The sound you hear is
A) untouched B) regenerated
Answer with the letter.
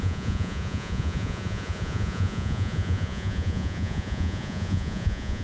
B